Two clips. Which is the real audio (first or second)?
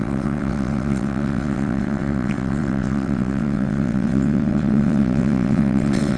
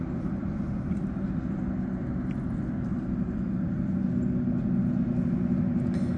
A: second